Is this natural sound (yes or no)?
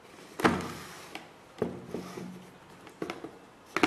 yes